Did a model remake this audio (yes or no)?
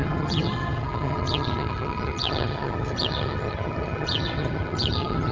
yes